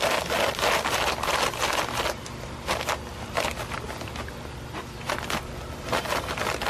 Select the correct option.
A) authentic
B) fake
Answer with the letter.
A